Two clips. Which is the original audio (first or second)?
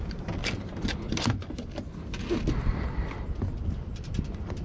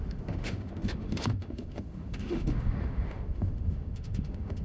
first